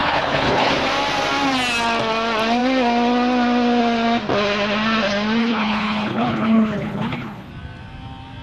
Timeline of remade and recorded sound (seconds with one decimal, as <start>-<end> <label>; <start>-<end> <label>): 0.0-0.7 remade; 0.7-5.4 recorded; 5.4-7.5 remade; 7.5-8.4 recorded

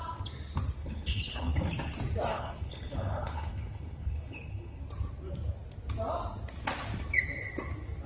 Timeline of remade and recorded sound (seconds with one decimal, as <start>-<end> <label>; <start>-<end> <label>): 0.0-0.8 recorded; 0.8-1.5 remade; 1.5-2.3 recorded; 2.3-4.8 remade; 4.8-8.1 recorded